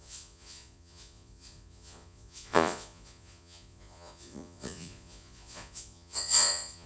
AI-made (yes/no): yes